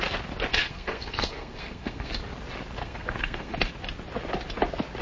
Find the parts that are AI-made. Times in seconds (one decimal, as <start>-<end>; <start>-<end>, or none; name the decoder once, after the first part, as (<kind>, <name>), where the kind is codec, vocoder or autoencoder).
0.5-2.1 (codec, SNAC); 2.8-3.7

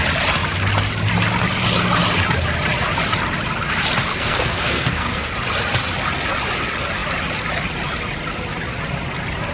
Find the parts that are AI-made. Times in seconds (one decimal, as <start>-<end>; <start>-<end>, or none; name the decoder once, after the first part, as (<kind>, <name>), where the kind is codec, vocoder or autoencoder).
4.1-5.3 (codec, SNAC)

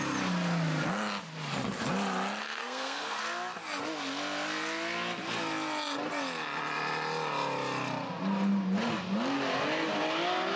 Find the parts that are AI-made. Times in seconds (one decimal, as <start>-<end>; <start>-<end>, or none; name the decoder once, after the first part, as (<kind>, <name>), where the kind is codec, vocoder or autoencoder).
2.4-3.2 (codec, SNAC)